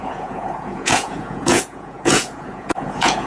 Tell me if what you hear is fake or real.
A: fake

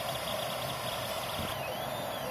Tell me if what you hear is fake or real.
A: real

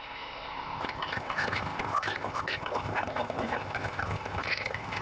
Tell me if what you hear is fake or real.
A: fake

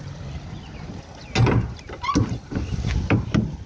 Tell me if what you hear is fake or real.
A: real